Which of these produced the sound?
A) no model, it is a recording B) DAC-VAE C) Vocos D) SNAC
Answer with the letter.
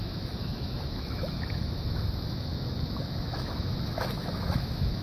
B